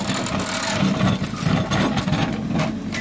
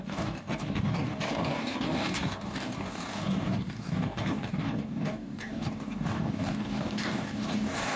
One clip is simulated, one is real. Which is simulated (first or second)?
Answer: second